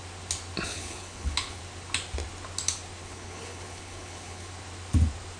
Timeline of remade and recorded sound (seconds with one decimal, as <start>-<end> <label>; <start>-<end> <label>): 0.0-0.7 recorded; 0.7-1.6 remade; 1.6-3.0 recorded; 3.0-4.5 remade; 4.5-5.4 recorded